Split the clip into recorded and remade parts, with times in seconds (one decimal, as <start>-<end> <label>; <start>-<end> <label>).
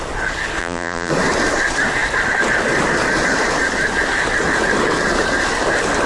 0.0-0.6 recorded; 0.6-1.1 remade; 1.1-6.1 recorded